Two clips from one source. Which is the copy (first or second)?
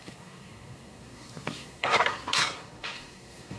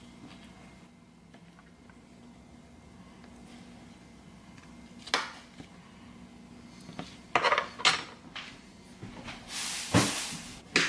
first